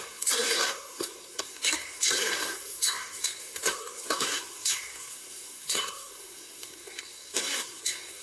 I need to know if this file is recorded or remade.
remade